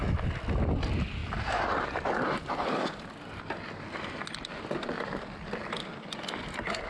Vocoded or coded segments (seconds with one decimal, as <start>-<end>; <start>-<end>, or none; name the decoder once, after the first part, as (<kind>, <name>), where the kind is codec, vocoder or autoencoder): none